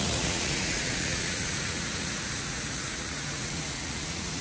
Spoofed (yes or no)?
yes